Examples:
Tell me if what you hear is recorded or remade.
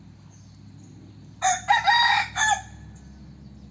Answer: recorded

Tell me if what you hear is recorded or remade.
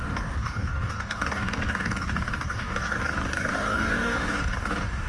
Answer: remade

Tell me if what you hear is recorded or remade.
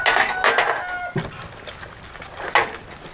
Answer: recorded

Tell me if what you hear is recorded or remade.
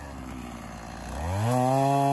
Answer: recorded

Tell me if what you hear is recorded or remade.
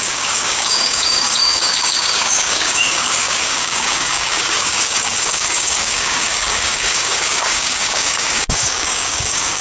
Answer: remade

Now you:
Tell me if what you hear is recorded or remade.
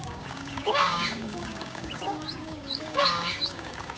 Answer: remade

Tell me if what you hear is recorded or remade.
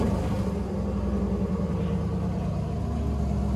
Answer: recorded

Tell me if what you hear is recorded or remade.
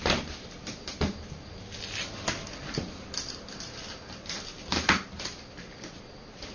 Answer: recorded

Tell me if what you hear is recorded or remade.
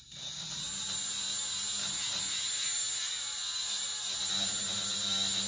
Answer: recorded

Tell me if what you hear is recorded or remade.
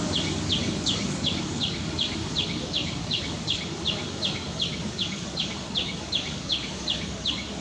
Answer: remade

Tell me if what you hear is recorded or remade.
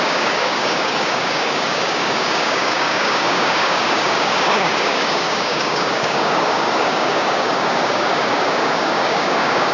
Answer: remade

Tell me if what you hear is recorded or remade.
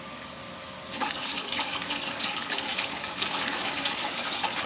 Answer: remade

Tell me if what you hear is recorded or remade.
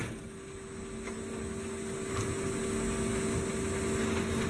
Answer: recorded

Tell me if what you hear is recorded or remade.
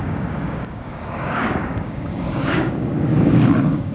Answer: remade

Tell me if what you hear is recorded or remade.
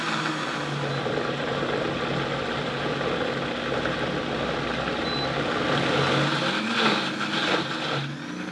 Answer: recorded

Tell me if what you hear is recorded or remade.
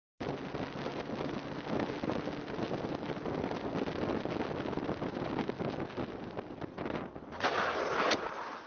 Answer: recorded